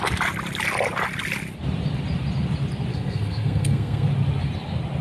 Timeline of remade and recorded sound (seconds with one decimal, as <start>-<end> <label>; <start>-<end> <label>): 0.0-2.9 recorded; 2.9-4.1 remade; 4.1-5.0 recorded